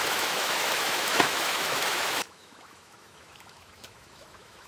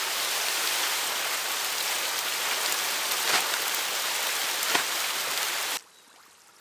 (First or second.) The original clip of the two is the second